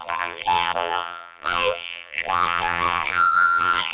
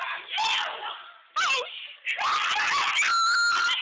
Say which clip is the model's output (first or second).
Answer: first